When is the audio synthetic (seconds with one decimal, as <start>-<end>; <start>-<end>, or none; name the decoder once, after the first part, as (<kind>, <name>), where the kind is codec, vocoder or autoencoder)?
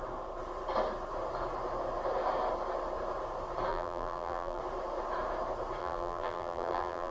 3.7-4.6 (vocoder, BigVGAN v2); 5.8-7.1